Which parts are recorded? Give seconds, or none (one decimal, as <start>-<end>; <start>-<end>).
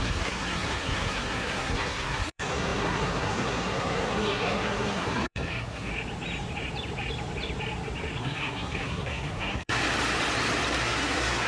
5.9-8.2; 9.8-10.8